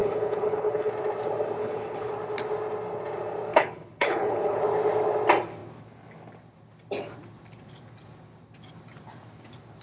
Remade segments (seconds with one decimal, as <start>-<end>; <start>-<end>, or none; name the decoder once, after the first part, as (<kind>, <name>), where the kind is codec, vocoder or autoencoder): 0.0-0.9 (codec, HILCodec); 1.6-2.1; 3.5-4.6